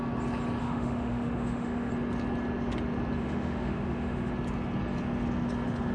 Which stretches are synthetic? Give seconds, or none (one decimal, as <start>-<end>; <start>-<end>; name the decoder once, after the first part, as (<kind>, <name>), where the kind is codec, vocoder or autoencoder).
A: 0.6-1.9 (autoencoder, DAC-VAE); 3.2-4.3